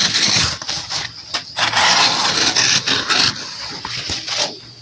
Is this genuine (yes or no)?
yes